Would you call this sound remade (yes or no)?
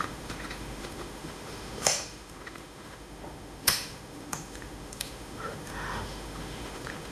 yes